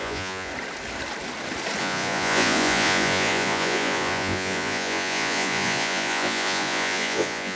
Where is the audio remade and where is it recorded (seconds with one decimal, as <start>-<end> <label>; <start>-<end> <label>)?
0.0-0.5 remade; 0.5-1.8 recorded; 1.8-7.6 remade